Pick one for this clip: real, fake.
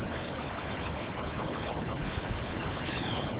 fake